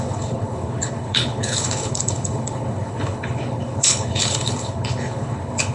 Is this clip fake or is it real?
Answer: fake